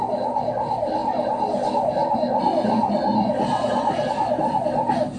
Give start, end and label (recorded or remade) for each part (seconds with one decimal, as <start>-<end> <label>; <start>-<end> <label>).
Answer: 0.0-5.2 recorded